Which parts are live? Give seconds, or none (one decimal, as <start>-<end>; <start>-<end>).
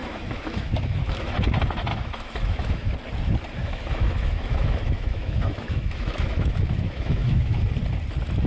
1.3-1.9; 2.9-3.6; 7.6-8.5